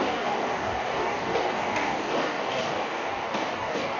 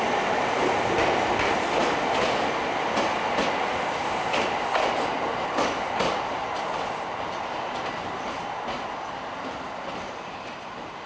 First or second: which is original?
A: second